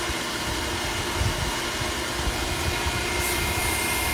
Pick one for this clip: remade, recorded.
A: recorded